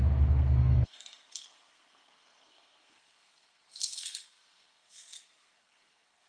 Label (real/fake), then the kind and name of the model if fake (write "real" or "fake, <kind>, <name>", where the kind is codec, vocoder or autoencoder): fake, codec, SNAC